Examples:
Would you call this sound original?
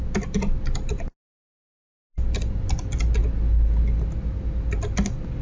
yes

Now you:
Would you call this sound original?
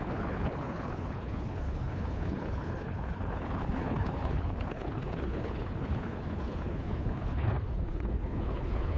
no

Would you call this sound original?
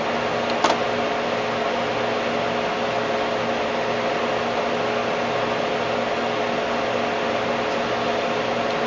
yes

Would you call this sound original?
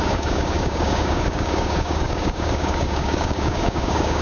no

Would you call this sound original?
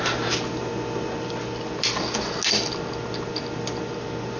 yes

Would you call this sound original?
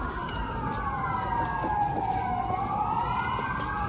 yes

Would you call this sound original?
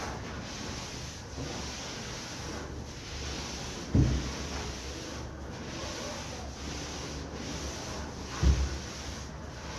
yes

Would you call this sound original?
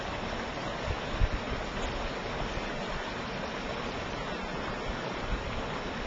yes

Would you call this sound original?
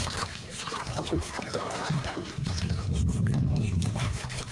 no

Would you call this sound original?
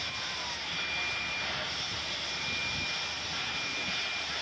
yes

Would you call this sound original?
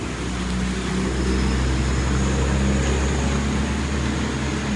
yes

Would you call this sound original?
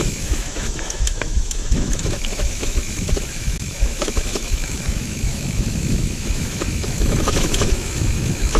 no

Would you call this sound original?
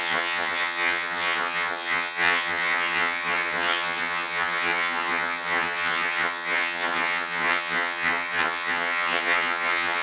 no